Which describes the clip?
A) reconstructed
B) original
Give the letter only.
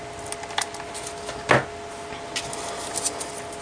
B